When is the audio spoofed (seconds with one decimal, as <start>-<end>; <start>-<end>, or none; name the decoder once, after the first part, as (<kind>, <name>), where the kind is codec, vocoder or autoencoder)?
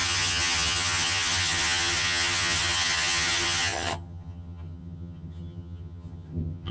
0.0-6.7 (vocoder, HiFi-GAN)